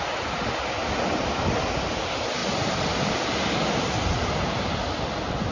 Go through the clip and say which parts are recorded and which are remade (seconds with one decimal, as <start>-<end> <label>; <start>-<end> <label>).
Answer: 0.0-5.5 recorded